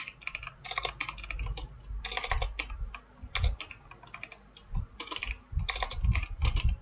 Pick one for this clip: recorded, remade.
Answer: recorded